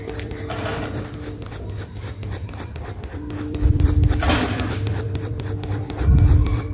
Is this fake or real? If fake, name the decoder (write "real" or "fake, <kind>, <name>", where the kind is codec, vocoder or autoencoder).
fake, vocoder, BigVGAN v2